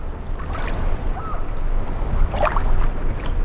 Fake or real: real